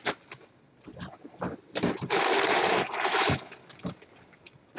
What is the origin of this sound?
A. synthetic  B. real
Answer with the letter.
B